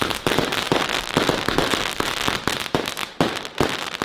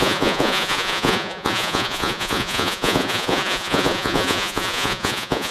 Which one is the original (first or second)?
first